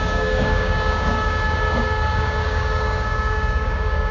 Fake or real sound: fake